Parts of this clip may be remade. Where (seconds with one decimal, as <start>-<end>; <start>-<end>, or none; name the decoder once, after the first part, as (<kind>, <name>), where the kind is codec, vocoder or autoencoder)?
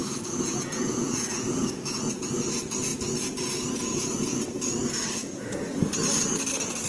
0.0-2.3 (vocoder, Vocos); 3.9-4.4; 5.2-5.9